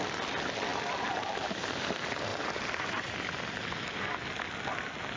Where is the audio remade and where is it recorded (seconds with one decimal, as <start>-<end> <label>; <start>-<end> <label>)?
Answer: 0.0-2.3 recorded; 2.3-3.4 remade; 3.4-5.2 recorded